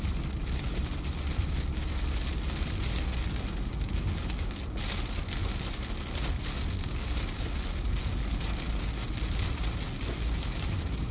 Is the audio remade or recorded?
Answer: recorded